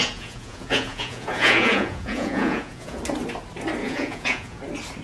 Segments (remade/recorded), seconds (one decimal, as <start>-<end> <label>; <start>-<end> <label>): 0.0-3.0 remade; 3.0-3.8 recorded; 3.8-4.6 remade; 4.6-5.0 recorded